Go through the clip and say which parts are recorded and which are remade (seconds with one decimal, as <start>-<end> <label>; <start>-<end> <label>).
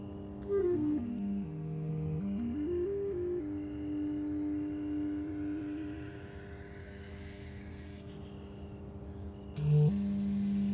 0.0-0.6 recorded; 0.6-1.9 remade; 1.9-6.8 recorded; 6.8-8.1 remade; 8.1-10.7 recorded